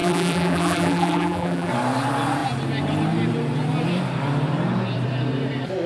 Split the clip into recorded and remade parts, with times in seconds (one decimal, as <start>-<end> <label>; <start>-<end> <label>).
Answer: 0.0-1.7 remade; 1.7-5.9 recorded